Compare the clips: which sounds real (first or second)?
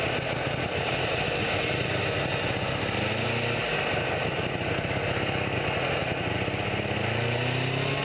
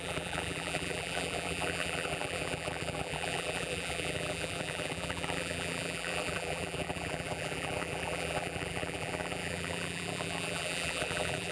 first